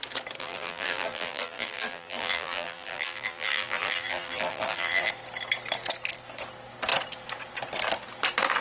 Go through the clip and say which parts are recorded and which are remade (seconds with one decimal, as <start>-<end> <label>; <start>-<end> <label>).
0.0-0.4 recorded; 0.4-5.1 remade; 5.1-8.6 recorded

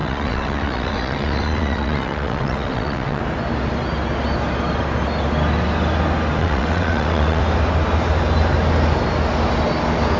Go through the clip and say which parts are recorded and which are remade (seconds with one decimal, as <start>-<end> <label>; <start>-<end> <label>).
0.0-3.2 remade; 3.2-6.4 recorded; 6.4-7.4 remade; 7.4-10.2 recorded

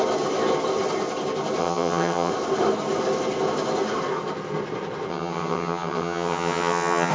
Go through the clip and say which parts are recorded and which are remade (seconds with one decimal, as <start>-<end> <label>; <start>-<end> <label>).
0.0-1.6 recorded; 1.6-2.3 remade; 2.3-5.1 recorded; 5.1-7.1 remade

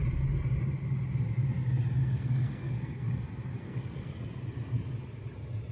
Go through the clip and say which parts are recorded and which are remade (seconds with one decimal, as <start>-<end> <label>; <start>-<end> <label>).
0.0-2.0 recorded; 2.0-3.1 remade; 3.1-3.5 recorded; 3.5-4.1 remade; 4.1-5.7 recorded